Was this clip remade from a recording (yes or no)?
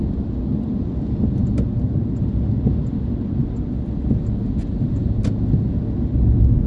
no